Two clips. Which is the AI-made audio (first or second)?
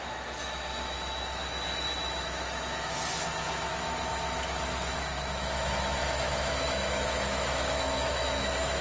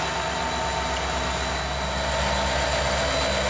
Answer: first